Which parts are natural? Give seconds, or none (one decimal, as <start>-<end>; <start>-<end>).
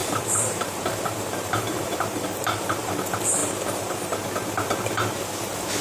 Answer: 2.9-5.8